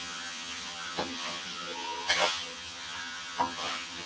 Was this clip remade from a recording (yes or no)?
yes